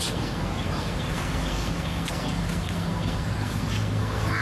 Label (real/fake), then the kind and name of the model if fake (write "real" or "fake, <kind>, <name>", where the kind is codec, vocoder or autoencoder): fake, codec, SNAC